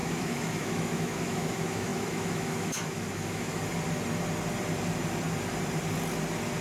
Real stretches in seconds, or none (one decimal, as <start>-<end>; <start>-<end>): 3.5-6.6